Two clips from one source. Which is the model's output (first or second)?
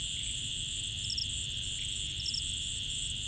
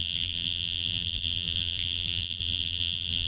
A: second